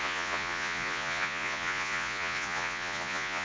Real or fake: fake